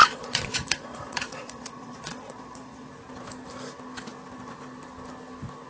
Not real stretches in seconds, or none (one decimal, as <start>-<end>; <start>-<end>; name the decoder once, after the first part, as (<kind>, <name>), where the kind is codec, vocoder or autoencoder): 0.0-2.9 (vocoder, Vocos)